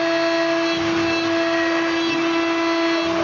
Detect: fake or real real